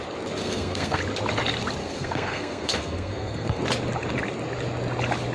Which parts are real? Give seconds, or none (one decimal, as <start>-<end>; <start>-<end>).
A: 0.0-0.4; 1.0-1.8; 3.6-5.3